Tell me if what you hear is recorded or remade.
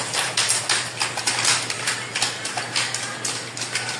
recorded